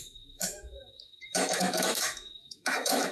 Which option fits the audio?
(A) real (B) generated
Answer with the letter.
B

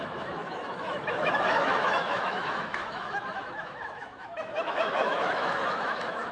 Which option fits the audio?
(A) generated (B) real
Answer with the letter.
A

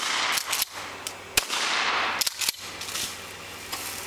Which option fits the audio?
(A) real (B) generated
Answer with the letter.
A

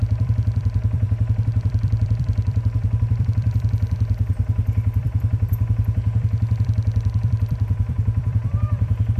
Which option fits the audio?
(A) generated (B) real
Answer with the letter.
A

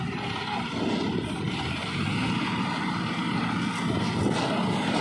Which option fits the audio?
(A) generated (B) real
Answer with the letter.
B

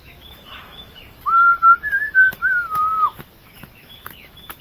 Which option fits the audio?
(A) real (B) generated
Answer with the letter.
B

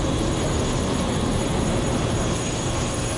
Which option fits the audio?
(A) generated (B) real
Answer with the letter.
B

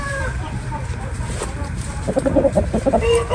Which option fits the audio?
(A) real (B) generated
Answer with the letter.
B